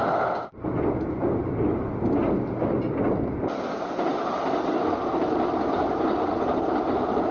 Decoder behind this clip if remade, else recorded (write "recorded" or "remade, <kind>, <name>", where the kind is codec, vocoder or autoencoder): recorded